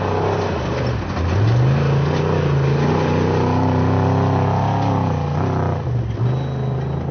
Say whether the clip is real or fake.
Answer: real